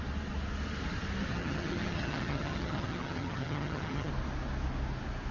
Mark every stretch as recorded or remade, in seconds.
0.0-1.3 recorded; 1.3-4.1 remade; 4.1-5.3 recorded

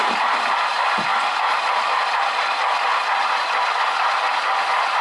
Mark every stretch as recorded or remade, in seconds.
0.0-5.0 recorded